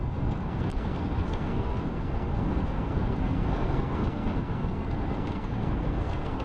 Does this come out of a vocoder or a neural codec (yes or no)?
yes